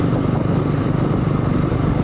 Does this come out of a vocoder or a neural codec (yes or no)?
no